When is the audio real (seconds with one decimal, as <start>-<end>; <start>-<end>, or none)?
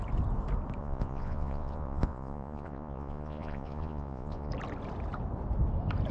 0.0-0.8; 4.5-6.1